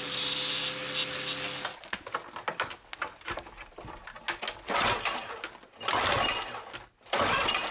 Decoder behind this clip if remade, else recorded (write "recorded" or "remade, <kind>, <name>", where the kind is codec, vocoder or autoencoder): recorded